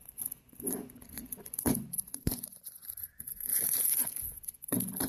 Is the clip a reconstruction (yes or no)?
yes